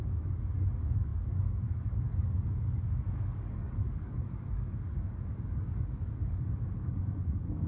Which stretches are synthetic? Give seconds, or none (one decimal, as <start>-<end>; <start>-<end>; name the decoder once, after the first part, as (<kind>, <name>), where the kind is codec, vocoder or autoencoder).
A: 0.0-7.7 (codec, DAC)